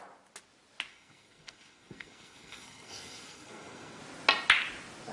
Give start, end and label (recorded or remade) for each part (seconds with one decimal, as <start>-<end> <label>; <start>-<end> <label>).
0.0-0.9 recorded; 0.9-4.0 remade; 4.0-5.1 recorded